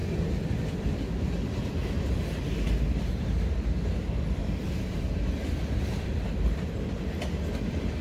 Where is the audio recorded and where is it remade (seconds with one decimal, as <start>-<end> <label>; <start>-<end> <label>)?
0.0-4.4 recorded; 4.4-6.7 remade; 6.7-8.0 recorded